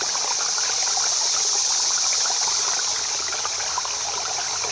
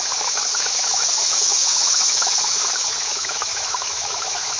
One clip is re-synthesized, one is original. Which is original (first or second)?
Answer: first